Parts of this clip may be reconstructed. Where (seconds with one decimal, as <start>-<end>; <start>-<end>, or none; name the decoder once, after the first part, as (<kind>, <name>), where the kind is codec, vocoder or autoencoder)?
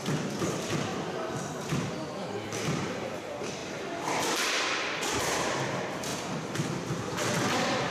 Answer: 0.0-0.9 (vocoder, BigVGAN v2); 1.9-3.6; 4.5-7.9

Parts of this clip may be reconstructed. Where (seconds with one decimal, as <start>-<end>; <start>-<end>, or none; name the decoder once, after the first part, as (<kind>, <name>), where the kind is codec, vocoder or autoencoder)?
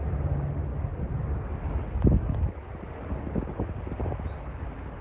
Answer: none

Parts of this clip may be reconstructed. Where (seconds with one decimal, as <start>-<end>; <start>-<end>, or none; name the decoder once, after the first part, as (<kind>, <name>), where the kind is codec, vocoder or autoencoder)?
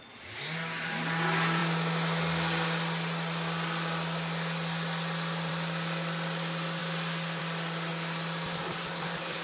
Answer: none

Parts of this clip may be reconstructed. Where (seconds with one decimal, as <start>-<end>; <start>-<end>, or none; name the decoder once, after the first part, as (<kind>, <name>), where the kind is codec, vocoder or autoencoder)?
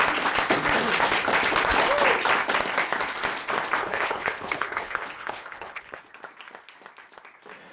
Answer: 3.8-6.0 (codec, HILCodec)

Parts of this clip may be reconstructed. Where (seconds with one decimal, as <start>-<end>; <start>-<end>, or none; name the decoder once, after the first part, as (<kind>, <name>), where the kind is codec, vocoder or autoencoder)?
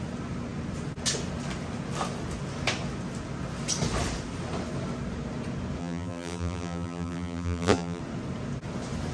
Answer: 5.8-8.0 (vocoder, BigVGAN v2)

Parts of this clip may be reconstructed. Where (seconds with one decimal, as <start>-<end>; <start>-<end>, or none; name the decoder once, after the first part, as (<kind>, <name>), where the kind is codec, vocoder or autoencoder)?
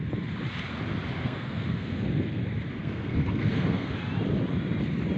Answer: 1.2-2.4 (codec, SNAC); 2.8-4.0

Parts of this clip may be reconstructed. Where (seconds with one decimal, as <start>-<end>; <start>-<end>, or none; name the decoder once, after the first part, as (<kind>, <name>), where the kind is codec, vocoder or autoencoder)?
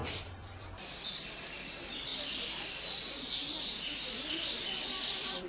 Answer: 0.0-5.5 (vocoder, BigVGAN v2)